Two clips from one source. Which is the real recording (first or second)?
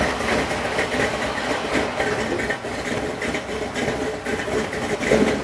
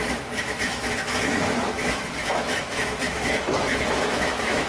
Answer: first